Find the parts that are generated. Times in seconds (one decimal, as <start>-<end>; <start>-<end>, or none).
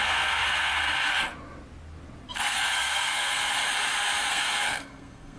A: 0.0-1.1; 2.3-3.6; 4.3-5.4